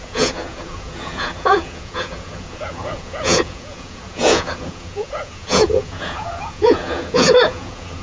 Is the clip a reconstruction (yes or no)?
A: yes